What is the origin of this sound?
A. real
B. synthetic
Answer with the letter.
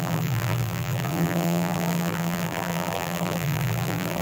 B